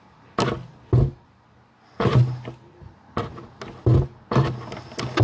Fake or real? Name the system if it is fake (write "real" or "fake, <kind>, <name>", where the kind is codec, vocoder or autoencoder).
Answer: real